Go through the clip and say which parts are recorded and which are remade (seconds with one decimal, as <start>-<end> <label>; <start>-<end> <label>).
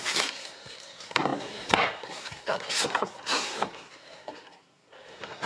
0.0-5.5 remade